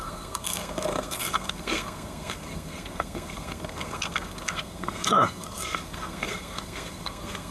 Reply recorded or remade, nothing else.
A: remade